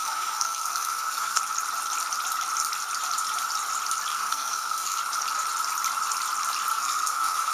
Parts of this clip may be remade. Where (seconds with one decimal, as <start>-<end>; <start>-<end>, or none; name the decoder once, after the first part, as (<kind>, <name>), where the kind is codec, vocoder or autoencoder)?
0.0-1.4 (codec, SNAC); 4.1-5.0; 6.7-7.5